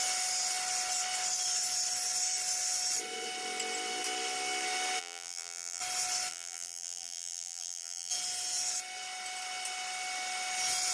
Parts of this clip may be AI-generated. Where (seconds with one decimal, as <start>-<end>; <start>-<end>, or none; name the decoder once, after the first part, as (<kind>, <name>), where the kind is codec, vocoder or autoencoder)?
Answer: 5.0-5.8 (vocoder, BigVGAN v2); 6.3-8.1